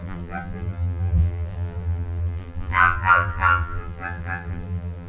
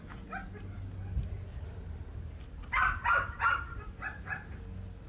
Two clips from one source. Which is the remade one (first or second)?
first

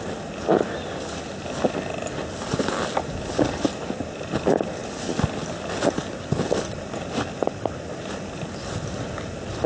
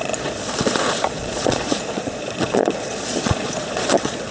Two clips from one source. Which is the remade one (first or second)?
second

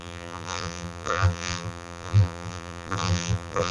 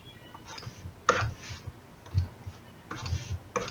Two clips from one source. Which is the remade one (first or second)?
first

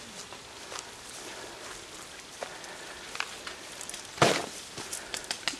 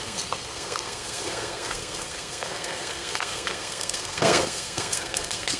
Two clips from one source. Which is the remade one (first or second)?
second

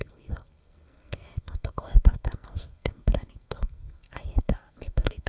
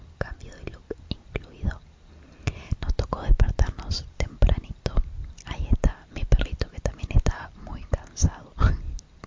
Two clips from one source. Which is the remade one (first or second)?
first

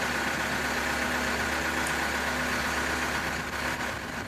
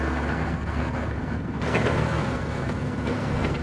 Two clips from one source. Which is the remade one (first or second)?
second